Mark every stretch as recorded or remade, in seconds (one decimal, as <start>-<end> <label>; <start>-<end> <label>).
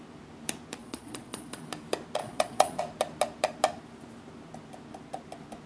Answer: 0.0-0.8 recorded; 0.8-1.7 remade; 1.7-2.2 recorded; 2.2-2.8 remade; 2.8-5.7 recorded